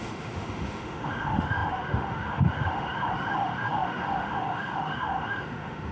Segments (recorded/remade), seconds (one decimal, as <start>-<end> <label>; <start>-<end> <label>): 0.0-5.9 remade